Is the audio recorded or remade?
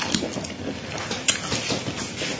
recorded